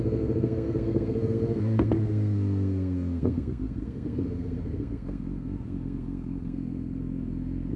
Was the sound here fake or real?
fake